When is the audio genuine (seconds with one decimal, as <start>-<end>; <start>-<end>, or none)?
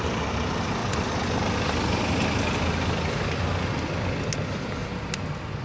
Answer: 0.0-5.6